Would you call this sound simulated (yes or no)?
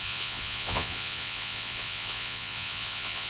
yes